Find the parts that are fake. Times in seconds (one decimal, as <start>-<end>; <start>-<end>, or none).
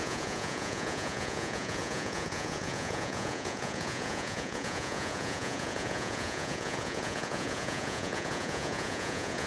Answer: 0.0-9.5